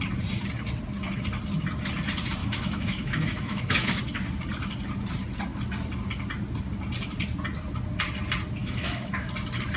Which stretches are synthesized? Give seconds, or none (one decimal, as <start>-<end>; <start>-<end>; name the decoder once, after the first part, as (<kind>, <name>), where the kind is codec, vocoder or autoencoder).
2.4-4.0 (autoencoder, DAC-VAE); 8.6-9.3